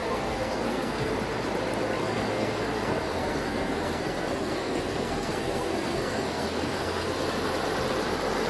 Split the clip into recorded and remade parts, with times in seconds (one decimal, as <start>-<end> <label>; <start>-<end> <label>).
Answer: 0.0-1.1 remade; 1.1-2.0 recorded; 2.0-7.1 remade; 7.1-8.5 recorded